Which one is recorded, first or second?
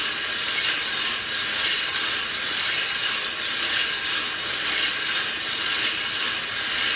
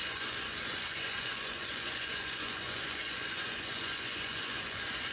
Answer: first